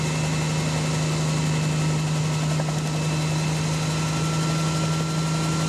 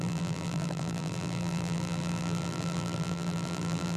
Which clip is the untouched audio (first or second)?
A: first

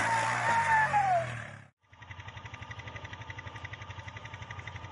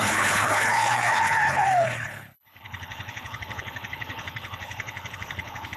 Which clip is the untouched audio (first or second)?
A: first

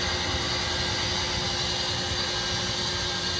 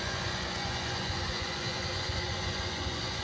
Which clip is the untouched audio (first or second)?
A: first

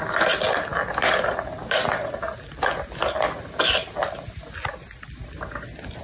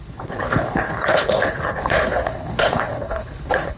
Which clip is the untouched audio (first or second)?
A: first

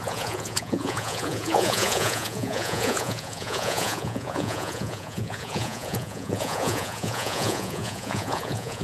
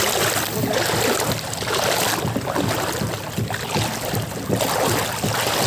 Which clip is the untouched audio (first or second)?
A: second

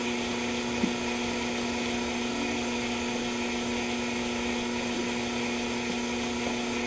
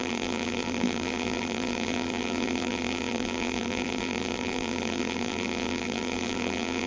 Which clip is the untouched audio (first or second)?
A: first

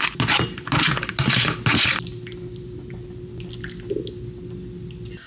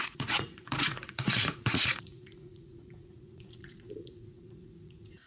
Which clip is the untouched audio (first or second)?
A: first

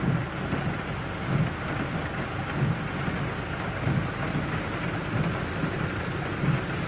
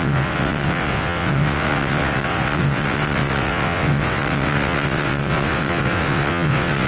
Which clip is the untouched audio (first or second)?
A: first